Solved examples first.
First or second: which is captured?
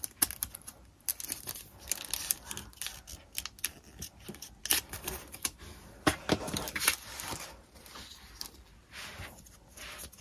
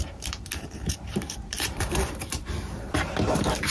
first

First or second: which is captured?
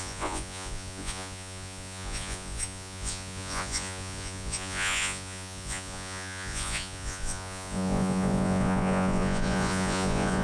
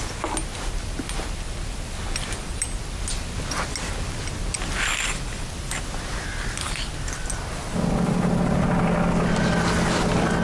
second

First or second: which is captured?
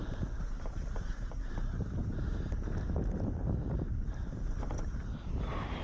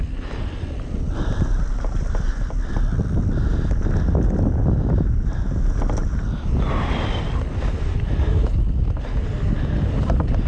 second